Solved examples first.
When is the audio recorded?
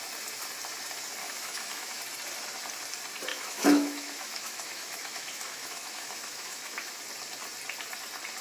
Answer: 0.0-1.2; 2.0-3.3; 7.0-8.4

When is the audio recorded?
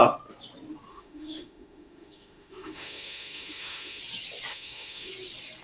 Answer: 0.0-0.9; 4.0-4.5; 5.1-5.6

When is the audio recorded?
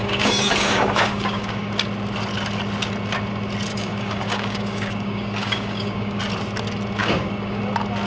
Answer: 1.7-3.7; 6.2-7.0; 7.6-8.1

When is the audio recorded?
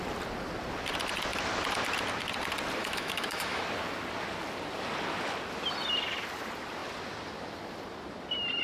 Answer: 0.0-2.8; 3.6-8.6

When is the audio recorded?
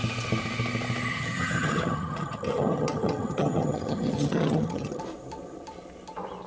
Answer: 0.0-1.1; 5.0-6.5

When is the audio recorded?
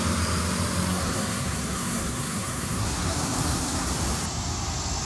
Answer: 0.0-0.9; 3.9-5.0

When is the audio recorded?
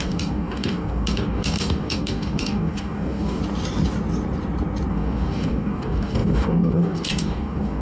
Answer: 3.4-4.9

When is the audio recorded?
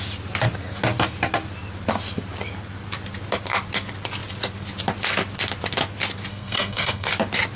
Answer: 0.0-6.3; 7.1-7.6